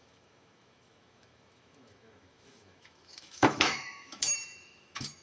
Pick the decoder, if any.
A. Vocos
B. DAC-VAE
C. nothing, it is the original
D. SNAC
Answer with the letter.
B